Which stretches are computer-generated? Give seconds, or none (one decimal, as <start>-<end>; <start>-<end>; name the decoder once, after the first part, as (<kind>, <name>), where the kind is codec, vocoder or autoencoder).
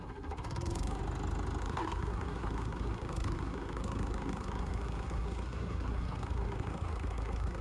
0.0-1.0 (codec, SNAC); 1.6-7.6